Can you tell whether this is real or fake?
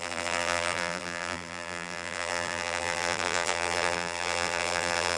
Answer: fake